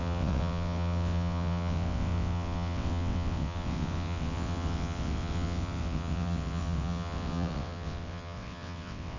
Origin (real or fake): fake